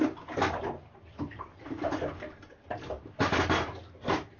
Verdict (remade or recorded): recorded